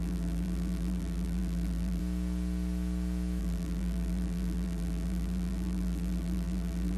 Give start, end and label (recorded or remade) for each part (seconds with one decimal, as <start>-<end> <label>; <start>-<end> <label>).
0.0-2.0 remade; 2.0-3.4 recorded; 3.4-7.0 remade

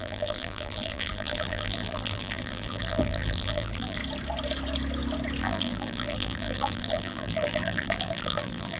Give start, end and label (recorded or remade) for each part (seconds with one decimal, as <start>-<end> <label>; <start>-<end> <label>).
0.0-4.0 remade; 4.0-5.4 recorded; 5.4-8.8 remade

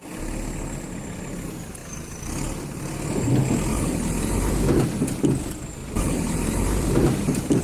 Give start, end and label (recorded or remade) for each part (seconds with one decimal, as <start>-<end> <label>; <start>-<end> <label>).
0.0-3.7 recorded; 3.7-4.5 remade; 4.5-5.8 recorded; 5.8-7.6 remade

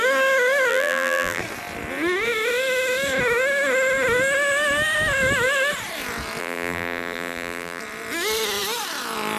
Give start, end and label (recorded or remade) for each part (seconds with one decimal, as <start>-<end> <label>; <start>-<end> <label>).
0.0-0.7 recorded; 0.7-1.4 remade; 1.4-6.4 recorded; 6.4-7.8 remade; 7.8-9.4 recorded

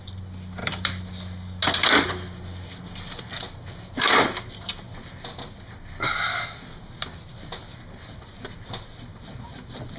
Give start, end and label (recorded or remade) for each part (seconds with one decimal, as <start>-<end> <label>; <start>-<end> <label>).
0.0-10.0 recorded

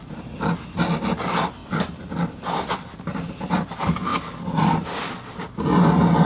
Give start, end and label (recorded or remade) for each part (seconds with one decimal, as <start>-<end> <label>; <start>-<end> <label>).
0.0-4.1 recorded; 4.1-4.6 remade; 4.6-6.3 recorded